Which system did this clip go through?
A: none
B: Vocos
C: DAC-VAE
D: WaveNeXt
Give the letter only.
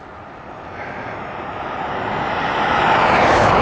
A